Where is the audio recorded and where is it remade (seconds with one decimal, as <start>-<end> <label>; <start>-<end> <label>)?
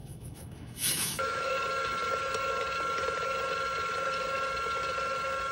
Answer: 0.0-1.5 remade; 1.5-5.5 recorded